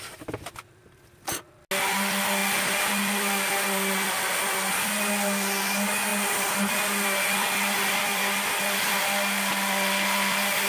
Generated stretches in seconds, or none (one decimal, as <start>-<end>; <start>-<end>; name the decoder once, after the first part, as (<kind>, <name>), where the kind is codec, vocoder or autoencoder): none